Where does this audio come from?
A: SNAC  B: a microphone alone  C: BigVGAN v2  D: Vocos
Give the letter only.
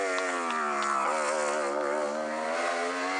B